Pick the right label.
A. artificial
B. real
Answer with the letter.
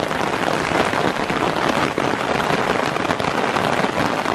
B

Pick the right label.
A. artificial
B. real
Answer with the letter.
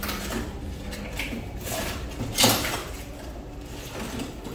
A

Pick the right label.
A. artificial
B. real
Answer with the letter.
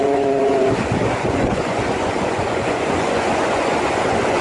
A